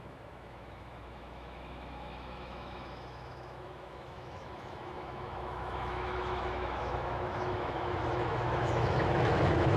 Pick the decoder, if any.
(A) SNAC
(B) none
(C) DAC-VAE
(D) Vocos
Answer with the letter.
C